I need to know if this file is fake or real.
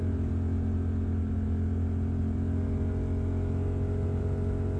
real